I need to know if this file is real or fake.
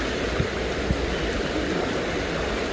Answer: real